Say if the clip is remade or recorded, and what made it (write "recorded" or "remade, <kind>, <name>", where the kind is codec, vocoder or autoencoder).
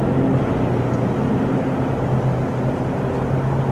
recorded